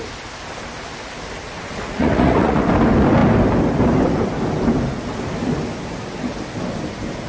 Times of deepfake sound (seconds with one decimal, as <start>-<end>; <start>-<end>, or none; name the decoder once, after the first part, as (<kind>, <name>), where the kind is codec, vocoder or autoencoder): 1.7-2.6 (vocoder, Vocos)